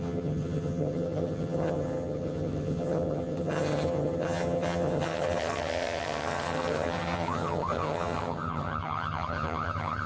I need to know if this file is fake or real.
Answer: fake